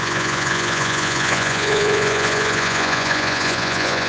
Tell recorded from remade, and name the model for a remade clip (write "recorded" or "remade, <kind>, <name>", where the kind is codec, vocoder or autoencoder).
remade, vocoder, Vocos